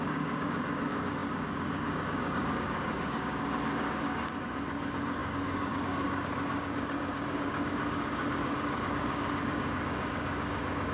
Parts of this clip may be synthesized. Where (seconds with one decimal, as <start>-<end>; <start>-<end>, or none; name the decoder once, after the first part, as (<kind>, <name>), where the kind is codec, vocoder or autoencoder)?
0.0-10.9 (codec, DAC)